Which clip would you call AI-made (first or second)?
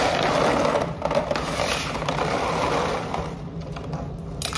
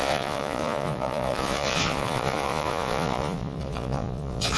second